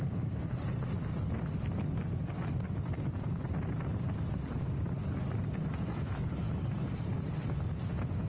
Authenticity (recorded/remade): recorded